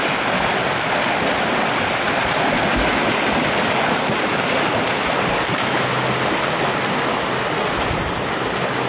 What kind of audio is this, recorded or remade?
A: recorded